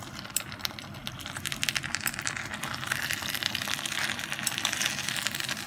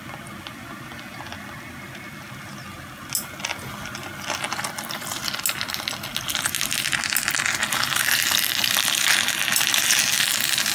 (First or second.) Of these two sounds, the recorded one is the second